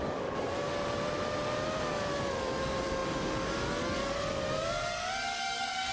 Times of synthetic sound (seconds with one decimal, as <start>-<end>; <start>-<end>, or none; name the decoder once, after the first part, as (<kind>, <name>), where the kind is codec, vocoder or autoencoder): 0.0-0.7 (codec, DAC); 1.8-5.9